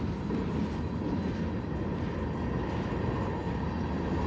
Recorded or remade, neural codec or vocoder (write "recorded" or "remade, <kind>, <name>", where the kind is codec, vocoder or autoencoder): recorded